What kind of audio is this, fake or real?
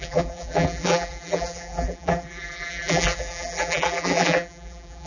fake